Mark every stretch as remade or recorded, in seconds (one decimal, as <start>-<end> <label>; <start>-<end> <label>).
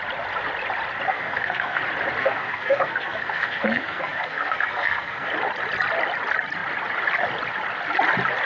0.0-1.1 recorded; 1.1-1.8 remade; 1.8-2.2 recorded; 2.2-5.3 remade; 5.3-8.4 recorded